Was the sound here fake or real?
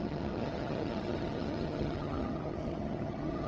fake